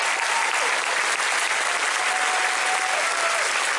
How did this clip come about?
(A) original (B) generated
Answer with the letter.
A